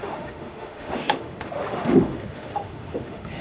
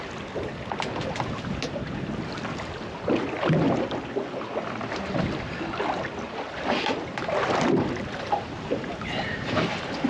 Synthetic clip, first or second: first